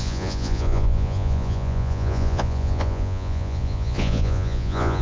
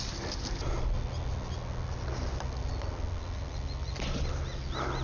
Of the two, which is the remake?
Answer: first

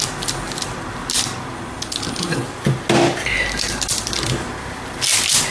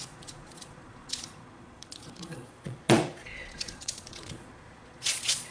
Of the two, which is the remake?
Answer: second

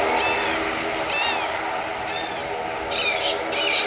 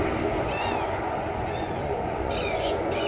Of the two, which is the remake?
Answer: second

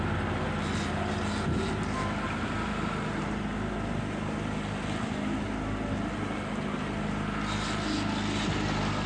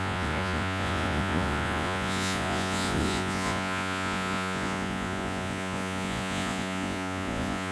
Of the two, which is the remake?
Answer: second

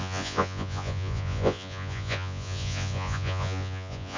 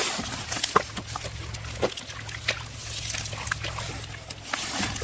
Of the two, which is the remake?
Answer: first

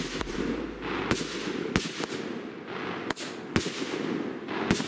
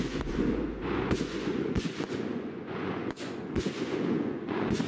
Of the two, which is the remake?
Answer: second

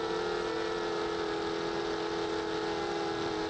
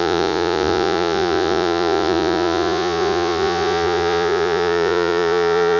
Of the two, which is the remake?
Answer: second